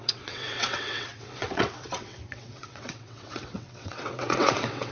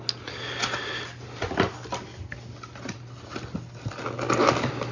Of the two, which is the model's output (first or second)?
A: first